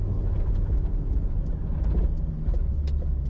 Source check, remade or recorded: recorded